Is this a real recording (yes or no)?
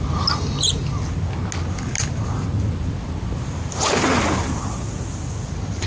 yes